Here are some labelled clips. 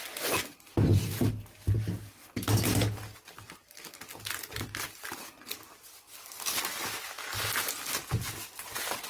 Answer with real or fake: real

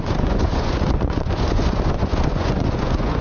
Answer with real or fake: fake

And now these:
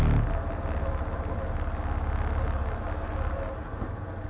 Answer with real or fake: real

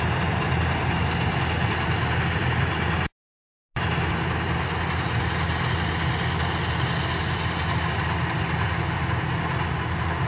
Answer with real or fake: real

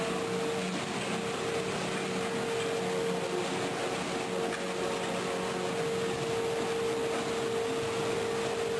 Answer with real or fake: real